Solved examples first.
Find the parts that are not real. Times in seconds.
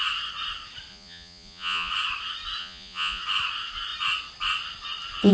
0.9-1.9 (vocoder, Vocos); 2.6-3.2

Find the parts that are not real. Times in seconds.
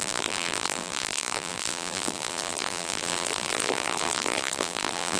0.0-5.2 (vocoder, BigVGAN v2)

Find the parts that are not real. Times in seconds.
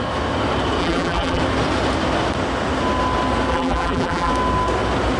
0.8-1.4 (vocoder, BigVGAN v2); 3.5-4.3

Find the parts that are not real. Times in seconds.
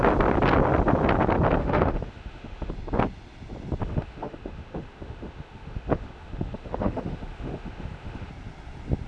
1.6-2.7 (autoencoder, DAC-VAE); 3.8-8.3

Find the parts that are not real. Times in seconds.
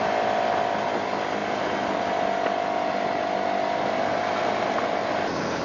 none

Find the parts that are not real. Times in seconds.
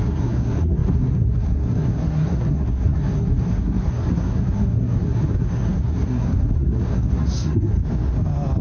0.0-7.8 (codec, SNAC)